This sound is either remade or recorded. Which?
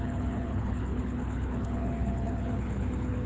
remade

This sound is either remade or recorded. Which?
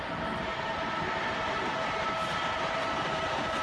recorded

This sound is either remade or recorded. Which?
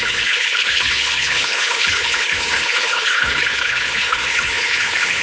remade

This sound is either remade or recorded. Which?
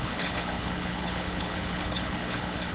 remade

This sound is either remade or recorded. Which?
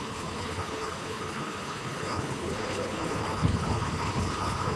remade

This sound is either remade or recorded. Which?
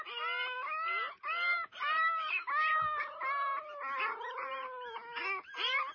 recorded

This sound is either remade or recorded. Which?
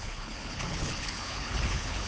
remade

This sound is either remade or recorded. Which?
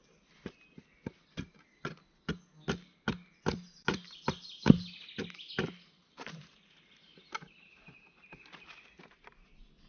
recorded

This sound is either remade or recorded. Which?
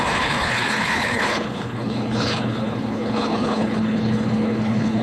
remade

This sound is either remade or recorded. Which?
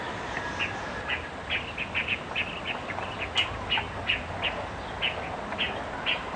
recorded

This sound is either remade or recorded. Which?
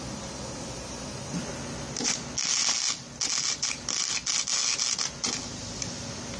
recorded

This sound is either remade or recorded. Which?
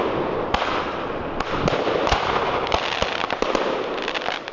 recorded